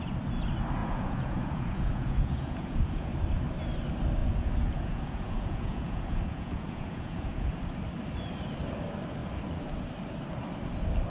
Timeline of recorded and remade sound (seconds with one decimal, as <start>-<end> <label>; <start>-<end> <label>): 0.0-0.8 recorded; 0.8-3.1 remade; 3.1-4.2 recorded; 4.2-7.6 remade; 7.6-11.1 recorded